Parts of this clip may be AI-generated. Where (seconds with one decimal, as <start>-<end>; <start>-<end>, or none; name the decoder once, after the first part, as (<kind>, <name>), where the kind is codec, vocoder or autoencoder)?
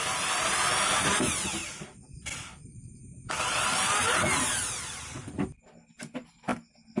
none